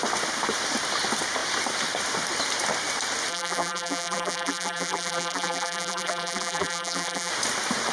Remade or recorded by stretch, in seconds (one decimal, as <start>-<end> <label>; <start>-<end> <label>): 0.0-3.3 recorded; 3.3-7.3 remade; 7.3-7.9 recorded